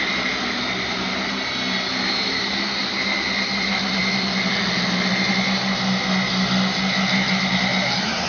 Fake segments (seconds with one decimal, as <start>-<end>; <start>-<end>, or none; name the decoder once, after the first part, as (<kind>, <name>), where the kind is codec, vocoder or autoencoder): none